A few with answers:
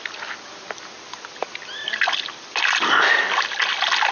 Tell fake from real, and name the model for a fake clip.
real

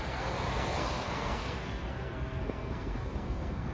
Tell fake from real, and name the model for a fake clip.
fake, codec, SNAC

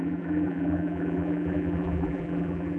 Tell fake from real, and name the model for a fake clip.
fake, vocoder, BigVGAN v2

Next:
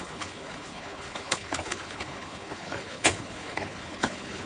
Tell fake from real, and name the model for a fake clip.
fake, codec, HILCodec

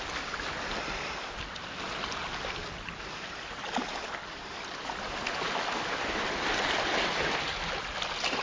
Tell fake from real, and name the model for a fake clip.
real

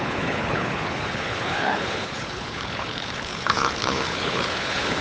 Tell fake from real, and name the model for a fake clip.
fake, codec, HILCodec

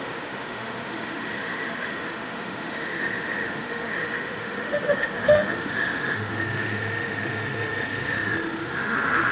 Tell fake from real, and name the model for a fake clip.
fake, autoencoder, DAC-VAE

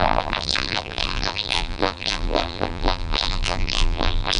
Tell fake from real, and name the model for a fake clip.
fake, vocoder, BigVGAN v2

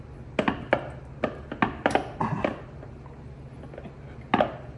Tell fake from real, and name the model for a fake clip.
real